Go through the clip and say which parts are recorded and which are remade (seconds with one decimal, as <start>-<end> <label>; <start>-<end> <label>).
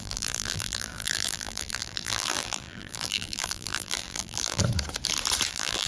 0.0-4.6 remade; 4.6-5.5 recorded; 5.5-5.9 remade